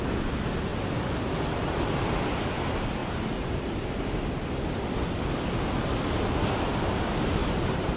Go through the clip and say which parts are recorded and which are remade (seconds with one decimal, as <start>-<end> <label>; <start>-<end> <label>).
0.0-7.4 recorded; 7.4-8.0 remade